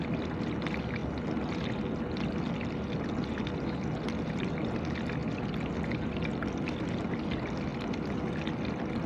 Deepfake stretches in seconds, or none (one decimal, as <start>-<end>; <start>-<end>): none